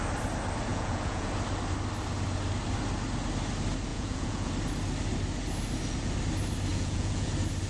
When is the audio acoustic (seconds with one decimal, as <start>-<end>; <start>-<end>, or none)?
0.0-0.7; 1.3-3.9; 4.5-6.7; 7.3-7.7